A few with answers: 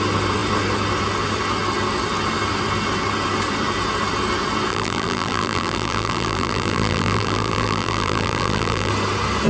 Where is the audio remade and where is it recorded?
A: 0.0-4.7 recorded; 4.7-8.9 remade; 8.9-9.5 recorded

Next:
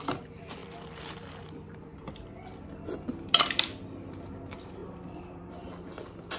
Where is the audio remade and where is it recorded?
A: 0.0-0.6 recorded; 0.6-2.1 remade; 2.1-4.8 recorded; 4.8-5.8 remade; 5.8-6.4 recorded

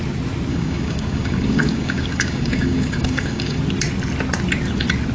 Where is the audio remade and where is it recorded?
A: 0.0-0.5 recorded; 0.5-3.6 remade; 3.6-5.1 recorded

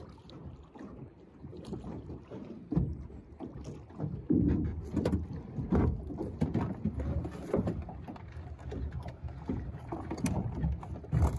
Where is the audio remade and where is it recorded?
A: 0.0-1.5 recorded; 1.5-3.5 remade; 3.5-11.4 recorded